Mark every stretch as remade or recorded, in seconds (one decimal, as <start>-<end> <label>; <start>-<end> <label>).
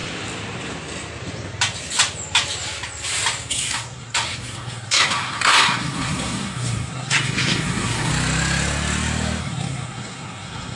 0.0-3.5 recorded; 3.5-8.1 remade; 8.1-9.4 recorded; 9.4-10.8 remade